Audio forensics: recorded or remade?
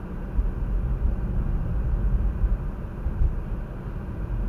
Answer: recorded